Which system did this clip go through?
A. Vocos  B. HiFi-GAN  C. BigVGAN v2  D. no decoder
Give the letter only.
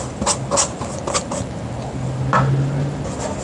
D